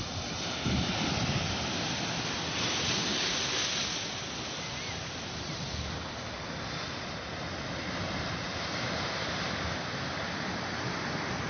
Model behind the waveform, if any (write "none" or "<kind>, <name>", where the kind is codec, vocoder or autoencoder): none